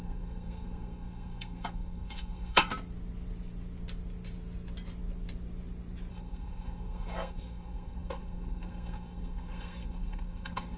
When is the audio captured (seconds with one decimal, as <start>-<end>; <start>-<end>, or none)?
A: 2.7-6.1